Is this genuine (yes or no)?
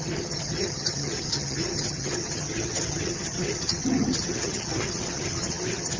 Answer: no